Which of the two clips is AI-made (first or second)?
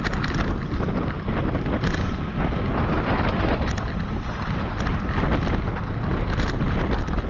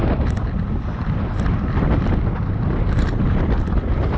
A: second